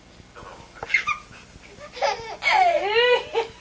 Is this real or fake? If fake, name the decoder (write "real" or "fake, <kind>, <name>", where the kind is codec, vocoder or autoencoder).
real